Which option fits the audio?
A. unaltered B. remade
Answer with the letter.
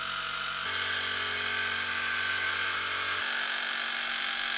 A